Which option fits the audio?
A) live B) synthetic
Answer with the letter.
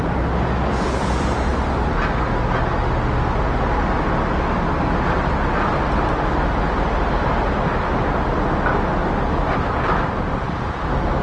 A